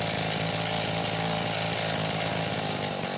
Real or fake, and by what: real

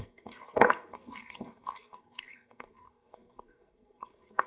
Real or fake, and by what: fake, codec, SNAC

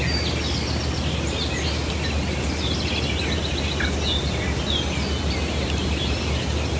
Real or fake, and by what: real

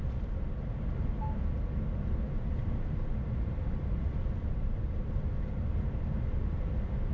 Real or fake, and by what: real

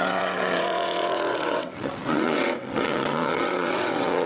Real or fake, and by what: fake, vocoder, WaveNeXt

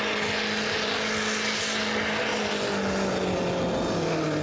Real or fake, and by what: real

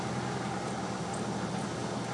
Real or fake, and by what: real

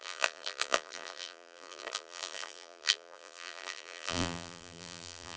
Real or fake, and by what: fake, vocoder, BigVGAN v2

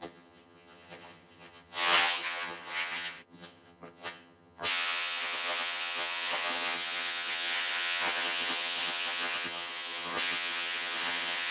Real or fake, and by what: fake, vocoder, HiFi-GAN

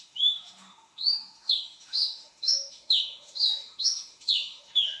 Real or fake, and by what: fake, autoencoder, DAC-VAE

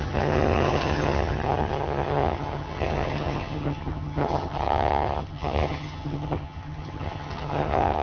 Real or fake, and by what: fake, vocoder, HiFi-GAN